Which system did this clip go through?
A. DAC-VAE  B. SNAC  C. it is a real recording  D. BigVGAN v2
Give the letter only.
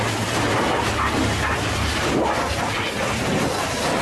C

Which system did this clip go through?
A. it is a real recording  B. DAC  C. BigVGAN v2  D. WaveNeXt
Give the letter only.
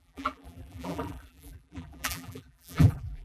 C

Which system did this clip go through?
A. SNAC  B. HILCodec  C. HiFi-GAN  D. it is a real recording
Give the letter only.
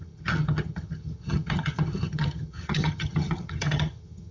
C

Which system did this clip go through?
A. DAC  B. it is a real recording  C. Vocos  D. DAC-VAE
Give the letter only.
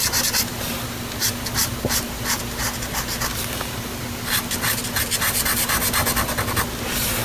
B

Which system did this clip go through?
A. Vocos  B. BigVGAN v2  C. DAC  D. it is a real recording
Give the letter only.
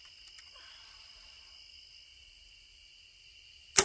D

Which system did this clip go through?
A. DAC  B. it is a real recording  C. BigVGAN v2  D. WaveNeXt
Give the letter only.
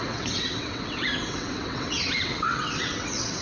D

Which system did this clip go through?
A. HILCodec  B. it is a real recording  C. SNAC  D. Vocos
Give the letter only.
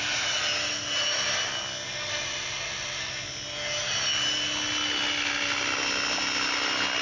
B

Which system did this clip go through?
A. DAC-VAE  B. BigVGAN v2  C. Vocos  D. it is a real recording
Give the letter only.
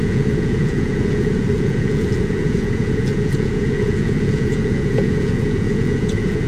C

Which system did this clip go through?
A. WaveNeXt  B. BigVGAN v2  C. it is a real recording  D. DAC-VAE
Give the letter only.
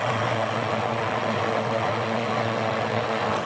A